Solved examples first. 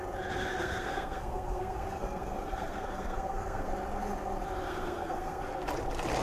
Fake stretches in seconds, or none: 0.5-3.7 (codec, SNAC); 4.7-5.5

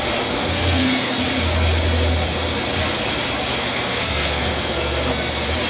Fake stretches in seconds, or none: 0.4-1.2 (codec, SNAC); 3.5-5.3

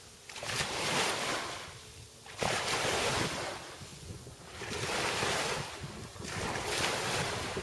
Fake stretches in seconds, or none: 3.9-4.4 (vocoder, Vocos)

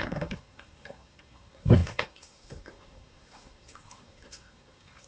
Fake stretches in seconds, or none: 0.0-5.1 (codec, SNAC)

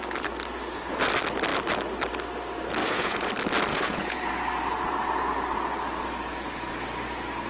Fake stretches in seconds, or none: 2.8-3.3 (vocoder, Vocos); 3.7-4.3

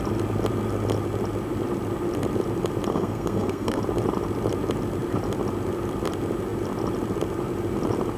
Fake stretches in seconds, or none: 2.9-3.8 (codec, SNAC)

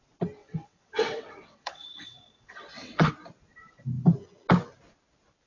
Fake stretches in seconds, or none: 0.4-3.1 (vocoder, WaveNeXt)

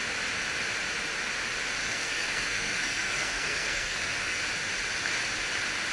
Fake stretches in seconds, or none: 1.8-4.4 (codec, SNAC)